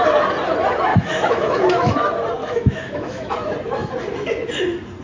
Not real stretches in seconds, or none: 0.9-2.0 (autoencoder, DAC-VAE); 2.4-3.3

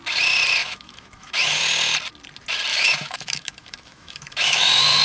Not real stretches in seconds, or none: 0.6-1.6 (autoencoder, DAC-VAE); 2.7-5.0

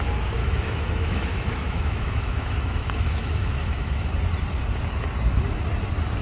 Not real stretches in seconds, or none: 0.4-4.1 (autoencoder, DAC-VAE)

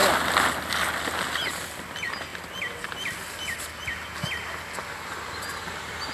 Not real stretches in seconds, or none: none

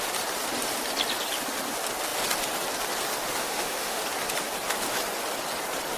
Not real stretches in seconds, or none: 3.4-4.0 (autoencoder, DAC-VAE)

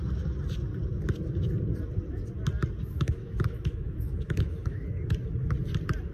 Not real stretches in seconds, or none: 2.8-4.8 (autoencoder, DAC-VAE)